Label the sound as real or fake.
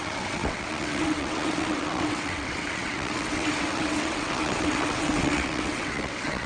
fake